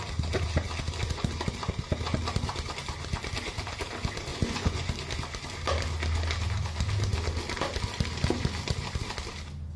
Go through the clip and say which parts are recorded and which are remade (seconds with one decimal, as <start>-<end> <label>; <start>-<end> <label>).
0.0-4.3 recorded; 4.3-4.9 remade; 4.9-9.8 recorded